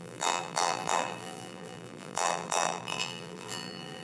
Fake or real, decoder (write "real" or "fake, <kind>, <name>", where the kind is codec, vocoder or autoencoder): fake, vocoder, BigVGAN v2